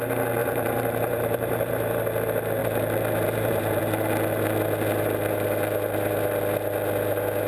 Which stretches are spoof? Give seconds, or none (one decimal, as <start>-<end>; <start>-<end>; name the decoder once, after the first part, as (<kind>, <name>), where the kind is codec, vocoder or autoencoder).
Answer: 0.4-2.0 (vocoder, BigVGAN v2); 2.6-3.8